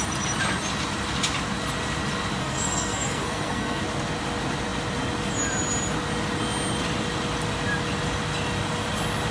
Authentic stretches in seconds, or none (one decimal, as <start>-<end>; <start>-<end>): 0.0-2.4; 3.8-9.3